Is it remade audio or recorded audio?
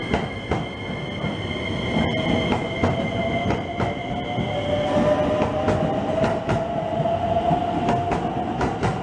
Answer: recorded